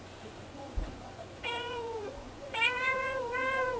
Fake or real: fake